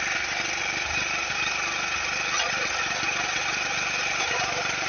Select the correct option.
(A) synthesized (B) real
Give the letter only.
B